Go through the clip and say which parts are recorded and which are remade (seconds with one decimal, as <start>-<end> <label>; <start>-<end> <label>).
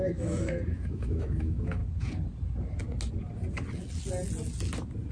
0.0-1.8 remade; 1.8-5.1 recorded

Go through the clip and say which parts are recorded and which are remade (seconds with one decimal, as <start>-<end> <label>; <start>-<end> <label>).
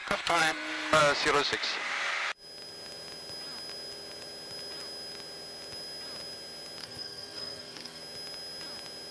0.0-1.0 remade; 1.0-6.8 recorded; 6.8-8.0 remade; 8.0-9.1 recorded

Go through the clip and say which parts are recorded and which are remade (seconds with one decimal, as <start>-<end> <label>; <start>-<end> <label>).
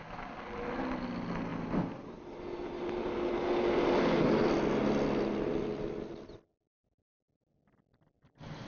0.0-8.7 recorded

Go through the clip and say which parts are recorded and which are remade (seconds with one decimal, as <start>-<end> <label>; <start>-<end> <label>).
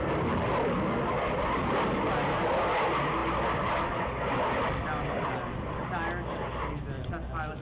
0.0-7.6 recorded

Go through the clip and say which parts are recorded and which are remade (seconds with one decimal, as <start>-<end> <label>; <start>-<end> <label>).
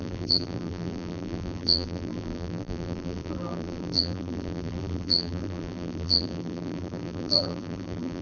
0.0-8.2 remade